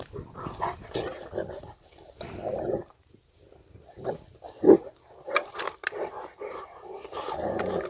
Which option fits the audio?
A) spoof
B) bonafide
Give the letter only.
B